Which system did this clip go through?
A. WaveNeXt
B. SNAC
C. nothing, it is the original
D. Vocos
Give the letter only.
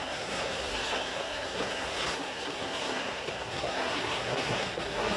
B